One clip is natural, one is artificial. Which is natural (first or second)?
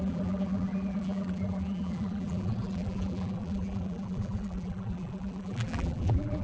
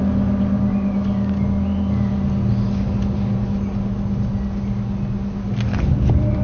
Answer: second